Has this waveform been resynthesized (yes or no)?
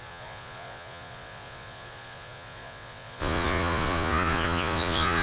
yes